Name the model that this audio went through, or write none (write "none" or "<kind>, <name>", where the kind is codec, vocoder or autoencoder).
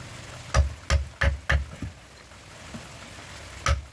none